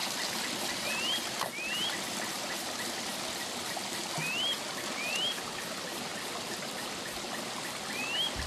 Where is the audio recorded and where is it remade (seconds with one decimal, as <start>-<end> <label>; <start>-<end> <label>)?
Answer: 0.0-8.5 recorded